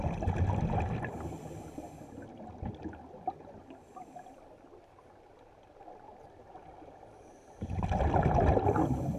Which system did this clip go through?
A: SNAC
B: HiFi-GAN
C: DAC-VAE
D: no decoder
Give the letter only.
D